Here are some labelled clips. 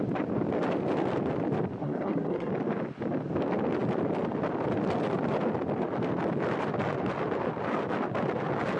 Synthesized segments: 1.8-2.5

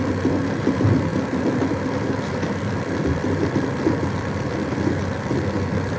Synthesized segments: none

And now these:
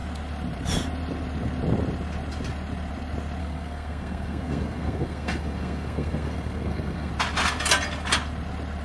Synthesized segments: 3.4-7.1